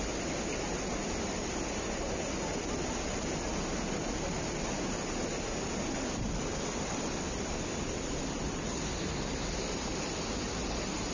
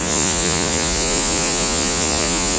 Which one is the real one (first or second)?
first